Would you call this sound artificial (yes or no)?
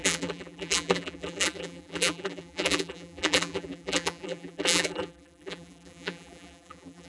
yes